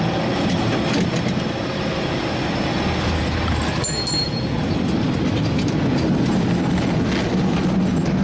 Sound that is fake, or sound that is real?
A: real